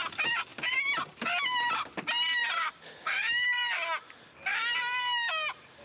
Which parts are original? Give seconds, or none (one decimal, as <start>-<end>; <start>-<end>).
0.0-5.8